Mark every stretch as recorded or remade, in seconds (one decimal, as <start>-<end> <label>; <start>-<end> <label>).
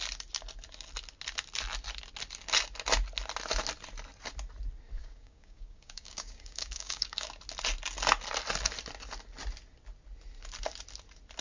0.0-5.0 recorded; 5.0-7.3 remade; 7.3-11.4 recorded